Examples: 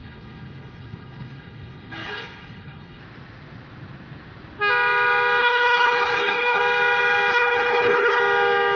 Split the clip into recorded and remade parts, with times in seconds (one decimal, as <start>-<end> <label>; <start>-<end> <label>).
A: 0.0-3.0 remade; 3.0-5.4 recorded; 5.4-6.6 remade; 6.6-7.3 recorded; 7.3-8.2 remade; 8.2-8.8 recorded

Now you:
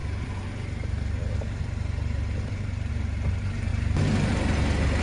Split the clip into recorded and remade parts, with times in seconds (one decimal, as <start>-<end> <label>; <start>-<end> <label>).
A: 0.0-3.7 remade; 3.7-5.0 recorded

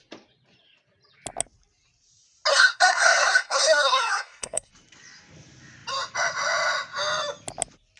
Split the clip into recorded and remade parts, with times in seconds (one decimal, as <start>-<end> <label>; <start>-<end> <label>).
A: 0.0-2.5 recorded; 2.5-4.7 remade; 4.7-8.0 recorded